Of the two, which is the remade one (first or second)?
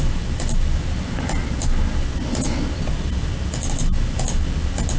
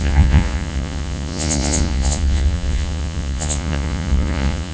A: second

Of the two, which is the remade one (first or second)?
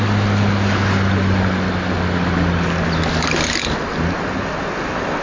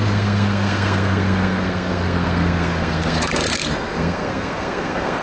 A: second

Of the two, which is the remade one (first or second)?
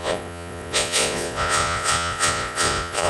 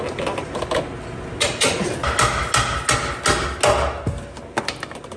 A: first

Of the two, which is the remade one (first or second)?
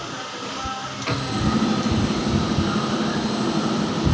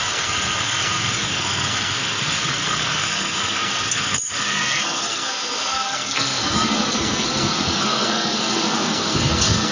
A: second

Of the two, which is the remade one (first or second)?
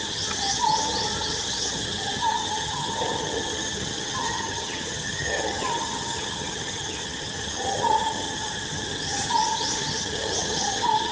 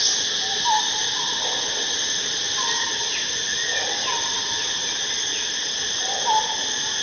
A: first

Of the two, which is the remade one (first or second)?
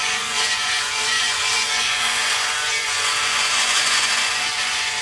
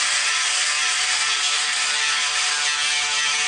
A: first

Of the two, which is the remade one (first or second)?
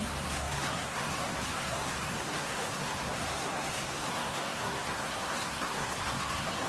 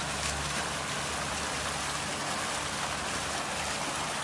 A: first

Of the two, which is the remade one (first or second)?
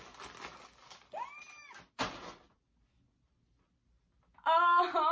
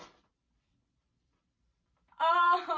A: second